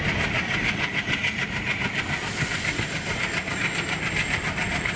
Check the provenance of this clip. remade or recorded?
recorded